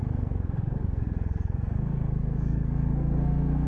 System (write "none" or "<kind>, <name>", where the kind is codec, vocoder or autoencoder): codec, SNAC